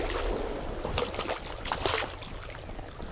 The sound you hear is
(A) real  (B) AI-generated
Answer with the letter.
A